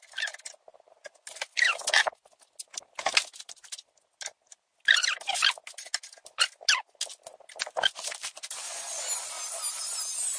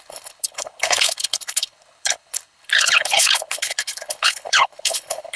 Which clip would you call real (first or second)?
first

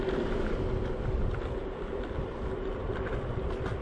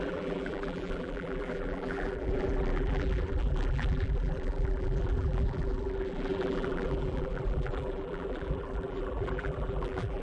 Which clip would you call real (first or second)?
first